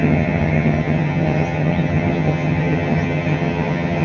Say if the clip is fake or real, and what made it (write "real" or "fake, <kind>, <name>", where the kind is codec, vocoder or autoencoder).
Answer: fake, vocoder, HiFi-GAN